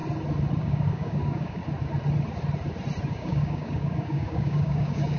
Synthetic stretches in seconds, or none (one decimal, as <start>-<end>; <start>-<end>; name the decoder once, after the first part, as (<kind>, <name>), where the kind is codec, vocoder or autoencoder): 0.6-1.6 (codec, DAC); 3.1-5.2